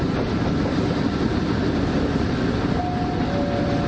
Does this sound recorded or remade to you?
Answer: recorded